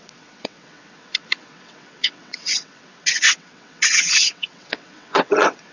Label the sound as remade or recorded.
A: remade